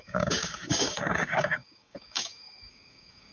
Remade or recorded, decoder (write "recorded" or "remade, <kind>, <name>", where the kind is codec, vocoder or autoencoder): remade, codec, DAC